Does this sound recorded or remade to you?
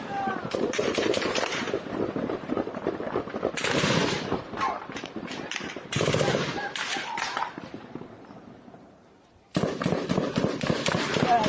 remade